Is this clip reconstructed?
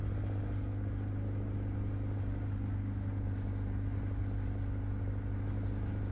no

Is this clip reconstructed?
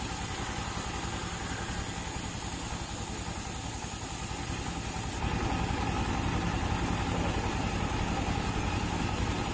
no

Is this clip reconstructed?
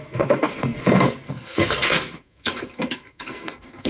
yes